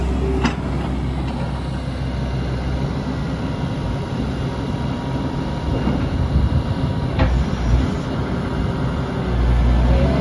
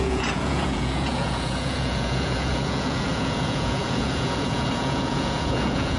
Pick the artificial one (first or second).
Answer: second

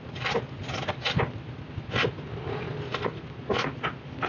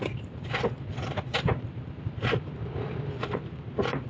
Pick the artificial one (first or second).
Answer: second